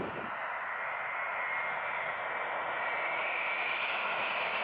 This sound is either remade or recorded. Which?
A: recorded